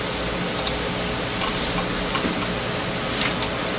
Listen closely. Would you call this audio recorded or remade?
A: recorded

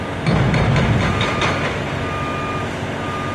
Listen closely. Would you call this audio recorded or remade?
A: recorded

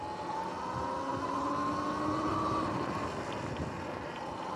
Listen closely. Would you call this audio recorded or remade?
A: recorded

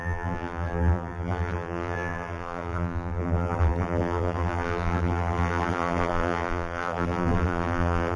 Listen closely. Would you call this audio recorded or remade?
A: remade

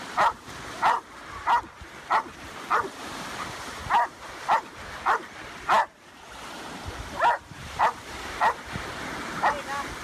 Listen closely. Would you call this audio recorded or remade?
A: recorded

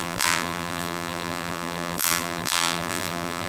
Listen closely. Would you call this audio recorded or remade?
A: remade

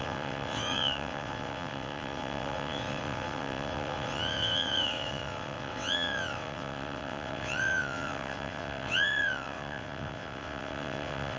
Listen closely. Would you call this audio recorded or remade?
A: remade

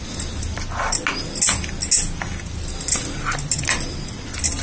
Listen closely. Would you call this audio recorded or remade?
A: recorded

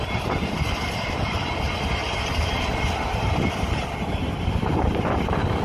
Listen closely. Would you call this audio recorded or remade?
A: recorded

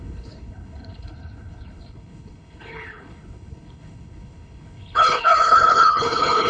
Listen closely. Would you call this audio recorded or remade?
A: remade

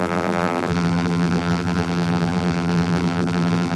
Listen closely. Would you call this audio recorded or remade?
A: remade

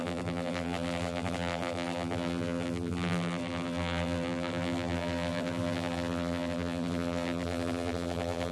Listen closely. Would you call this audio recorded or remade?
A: remade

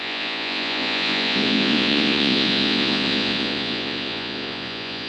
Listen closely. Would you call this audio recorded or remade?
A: remade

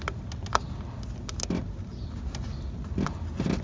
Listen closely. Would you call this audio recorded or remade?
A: recorded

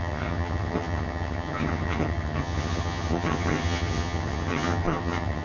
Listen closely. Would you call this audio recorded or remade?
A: remade